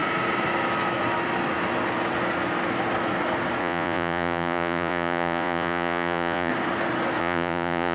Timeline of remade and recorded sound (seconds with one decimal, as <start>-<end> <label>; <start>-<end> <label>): 0.0-3.6 recorded; 3.6-6.5 remade; 6.5-7.2 recorded; 7.2-7.9 remade